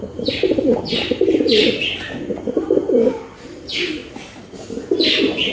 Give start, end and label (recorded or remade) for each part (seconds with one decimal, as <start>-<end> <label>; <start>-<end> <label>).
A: 0.0-4.0 remade; 4.0-5.5 recorded